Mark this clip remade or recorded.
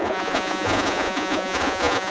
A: remade